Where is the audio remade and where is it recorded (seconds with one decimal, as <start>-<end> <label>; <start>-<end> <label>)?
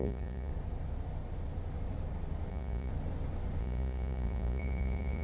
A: 0.0-0.5 remade; 0.5-2.5 recorded; 2.5-2.9 remade; 2.9-3.6 recorded; 3.6-5.2 remade